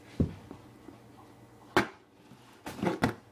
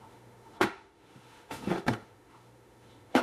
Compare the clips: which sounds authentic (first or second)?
first